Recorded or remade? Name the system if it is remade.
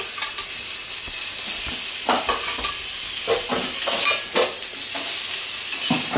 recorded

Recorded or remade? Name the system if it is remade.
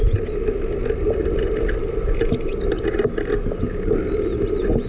recorded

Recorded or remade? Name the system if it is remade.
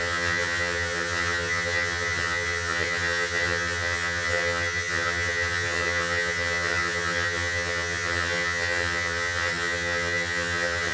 remade, vocoder, HiFi-GAN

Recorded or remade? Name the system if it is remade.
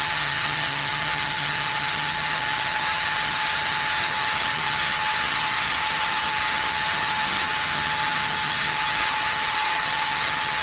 remade, vocoder, HiFi-GAN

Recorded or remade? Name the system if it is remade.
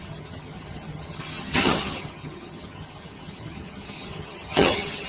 remade, vocoder, HiFi-GAN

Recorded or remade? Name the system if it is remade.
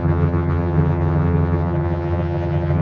remade, vocoder, HiFi-GAN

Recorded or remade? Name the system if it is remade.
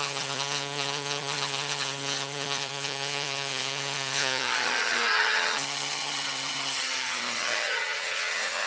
remade, vocoder, HiFi-GAN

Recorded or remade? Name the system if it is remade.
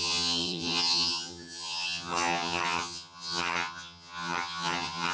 remade, vocoder, HiFi-GAN